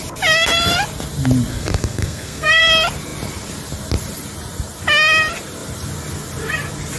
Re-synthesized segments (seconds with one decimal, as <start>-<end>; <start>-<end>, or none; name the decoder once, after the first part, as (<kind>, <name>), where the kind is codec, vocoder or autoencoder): 1.5-2.6 (codec, SNAC)